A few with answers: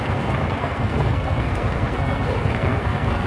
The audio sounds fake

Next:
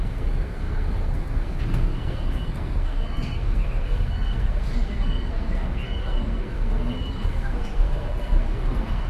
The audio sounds fake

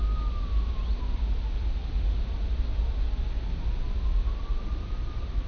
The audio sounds real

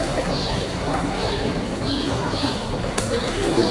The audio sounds fake